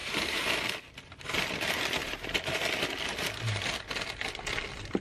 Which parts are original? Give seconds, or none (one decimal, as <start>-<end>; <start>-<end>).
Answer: 0.5-5.0

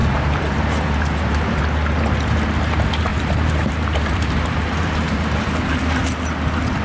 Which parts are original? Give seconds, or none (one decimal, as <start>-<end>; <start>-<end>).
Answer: 1.6-3.1; 5.9-6.8

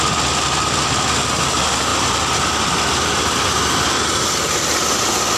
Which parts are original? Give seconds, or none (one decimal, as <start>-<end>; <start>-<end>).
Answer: 0.0-1.9

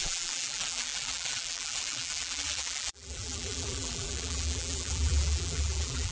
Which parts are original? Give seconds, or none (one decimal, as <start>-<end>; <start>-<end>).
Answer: none

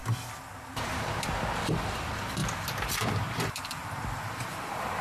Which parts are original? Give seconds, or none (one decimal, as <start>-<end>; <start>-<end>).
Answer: 0.0-0.6; 2.4-2.9; 3.8-4.6

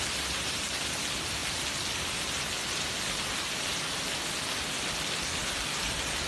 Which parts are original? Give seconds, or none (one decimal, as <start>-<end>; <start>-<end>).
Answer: 0.0-6.3